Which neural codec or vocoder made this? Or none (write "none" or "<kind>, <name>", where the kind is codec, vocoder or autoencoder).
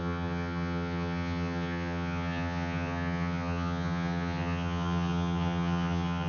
vocoder, HiFi-GAN